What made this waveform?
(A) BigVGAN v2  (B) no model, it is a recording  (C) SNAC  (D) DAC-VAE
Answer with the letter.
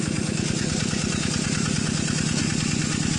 B